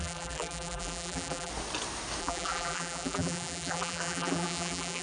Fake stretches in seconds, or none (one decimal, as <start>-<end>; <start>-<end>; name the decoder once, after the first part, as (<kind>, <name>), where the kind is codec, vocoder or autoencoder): 0.0-1.5 (vocoder, BigVGAN v2); 2.2-5.0